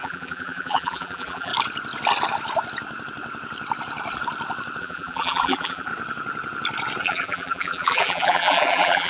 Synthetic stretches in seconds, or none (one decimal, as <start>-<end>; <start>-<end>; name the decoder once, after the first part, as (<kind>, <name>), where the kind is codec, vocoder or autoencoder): 0.0-1.5 (vocoder, BigVGAN v2); 4.8-5.9; 7.0-9.1